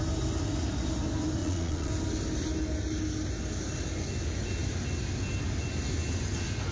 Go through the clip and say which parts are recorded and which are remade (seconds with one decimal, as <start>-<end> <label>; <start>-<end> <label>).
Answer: 0.0-1.4 recorded; 1.4-1.9 remade; 1.9-6.7 recorded